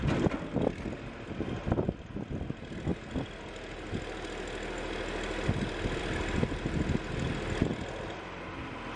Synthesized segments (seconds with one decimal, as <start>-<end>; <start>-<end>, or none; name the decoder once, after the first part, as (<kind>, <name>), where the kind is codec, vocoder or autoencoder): none